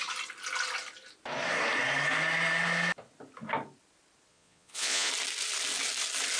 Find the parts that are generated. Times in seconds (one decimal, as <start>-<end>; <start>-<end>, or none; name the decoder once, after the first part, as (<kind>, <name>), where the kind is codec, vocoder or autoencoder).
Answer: 4.3-5.1 (vocoder, Vocos)